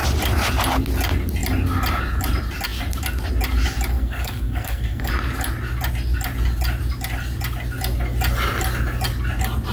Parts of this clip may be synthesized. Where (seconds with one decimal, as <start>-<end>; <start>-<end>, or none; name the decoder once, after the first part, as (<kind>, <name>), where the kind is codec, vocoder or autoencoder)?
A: 3.9-5.1 (codec, SNAC)